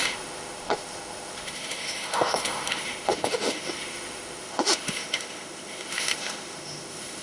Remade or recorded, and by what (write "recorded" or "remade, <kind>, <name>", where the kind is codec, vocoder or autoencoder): remade, autoencoder, DAC-VAE